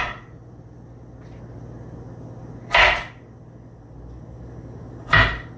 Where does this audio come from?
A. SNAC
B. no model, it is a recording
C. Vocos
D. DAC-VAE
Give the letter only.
B